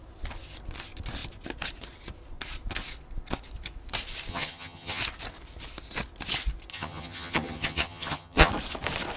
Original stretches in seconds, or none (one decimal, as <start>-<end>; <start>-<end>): 0.0-4.3; 5.0-6.7; 8.5-9.2